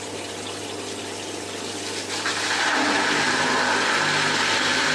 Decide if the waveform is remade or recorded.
recorded